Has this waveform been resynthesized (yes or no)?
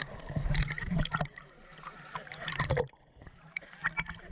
yes